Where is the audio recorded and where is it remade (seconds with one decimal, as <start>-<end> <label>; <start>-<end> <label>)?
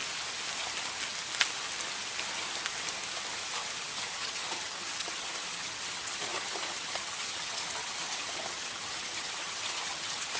0.0-3.8 recorded; 3.8-10.4 remade